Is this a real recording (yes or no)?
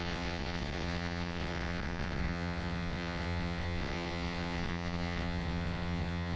no